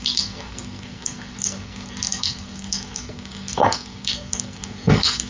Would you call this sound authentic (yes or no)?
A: no